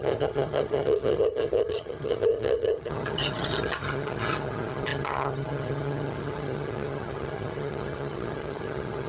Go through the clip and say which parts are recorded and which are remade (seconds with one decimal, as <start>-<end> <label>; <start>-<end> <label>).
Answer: 0.0-9.1 remade

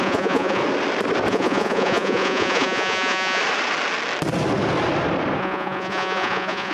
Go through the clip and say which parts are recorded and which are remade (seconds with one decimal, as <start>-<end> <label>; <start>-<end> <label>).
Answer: 0.0-0.6 remade; 0.6-1.3 recorded; 1.3-3.4 remade; 3.4-5.4 recorded; 5.4-6.7 remade

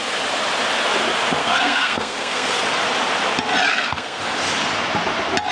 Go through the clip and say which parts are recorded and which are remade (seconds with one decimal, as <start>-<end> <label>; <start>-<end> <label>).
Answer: 0.0-1.4 recorded; 1.4-2.6 remade; 2.6-3.7 recorded; 3.7-4.2 remade; 4.2-5.5 recorded